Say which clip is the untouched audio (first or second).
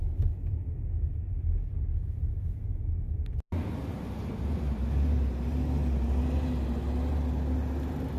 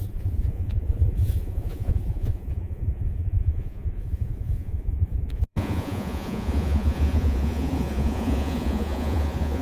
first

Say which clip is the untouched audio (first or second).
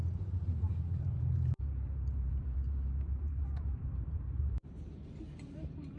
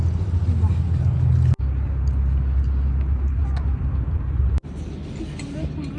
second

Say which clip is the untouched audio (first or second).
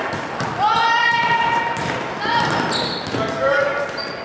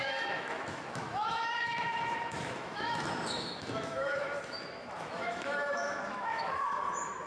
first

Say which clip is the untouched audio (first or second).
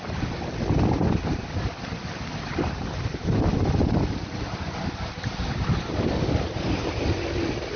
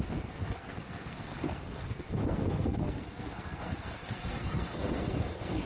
first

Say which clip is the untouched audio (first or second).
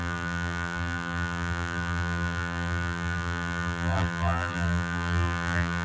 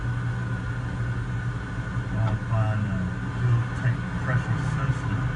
second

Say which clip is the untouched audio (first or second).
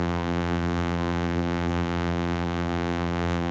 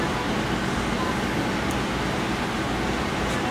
second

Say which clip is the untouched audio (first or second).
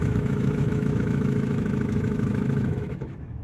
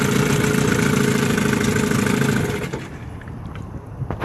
second